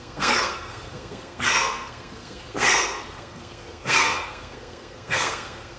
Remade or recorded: remade